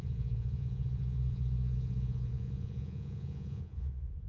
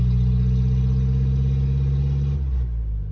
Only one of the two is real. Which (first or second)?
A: second